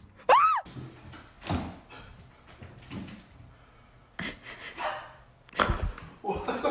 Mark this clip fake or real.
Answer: real